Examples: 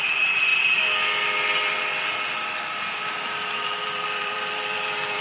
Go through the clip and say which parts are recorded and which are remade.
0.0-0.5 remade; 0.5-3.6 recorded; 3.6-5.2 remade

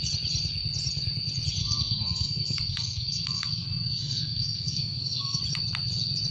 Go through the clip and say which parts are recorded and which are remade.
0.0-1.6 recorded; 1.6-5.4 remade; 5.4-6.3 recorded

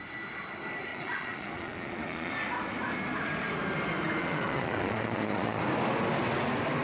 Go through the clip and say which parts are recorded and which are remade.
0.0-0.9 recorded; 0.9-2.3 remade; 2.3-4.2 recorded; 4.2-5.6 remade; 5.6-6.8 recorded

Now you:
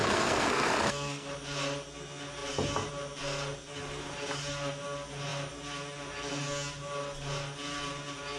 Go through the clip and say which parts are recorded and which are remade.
0.0-1.3 remade; 1.3-8.4 recorded

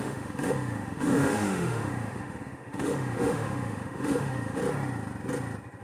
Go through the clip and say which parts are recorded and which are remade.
0.0-4.6 remade; 4.6-5.8 recorded

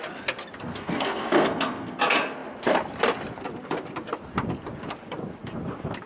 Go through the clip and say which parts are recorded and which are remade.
0.0-0.7 recorded; 0.7-2.0 remade; 2.0-6.1 recorded

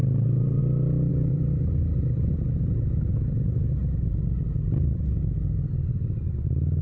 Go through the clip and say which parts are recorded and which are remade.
0.0-0.6 remade; 0.6-1.1 recorded; 1.1-5.2 remade; 5.2-6.8 recorded

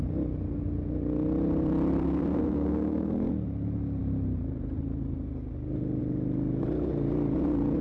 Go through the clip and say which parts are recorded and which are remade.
0.0-2.0 recorded; 2.0-3.3 remade; 3.3-7.8 recorded